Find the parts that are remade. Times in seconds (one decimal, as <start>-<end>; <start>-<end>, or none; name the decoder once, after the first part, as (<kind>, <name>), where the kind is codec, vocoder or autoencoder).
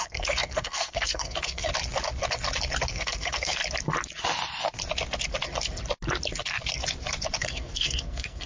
0.0-1.7 (codec, SNAC); 2.9-3.6; 7.4-8.5